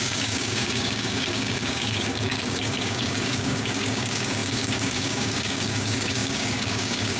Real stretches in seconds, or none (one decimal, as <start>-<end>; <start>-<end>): none

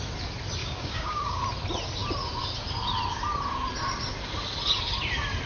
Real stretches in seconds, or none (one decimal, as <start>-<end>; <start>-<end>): 0.0-0.6; 1.4-5.5